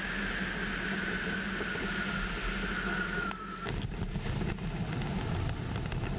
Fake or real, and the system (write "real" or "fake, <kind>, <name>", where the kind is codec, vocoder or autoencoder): real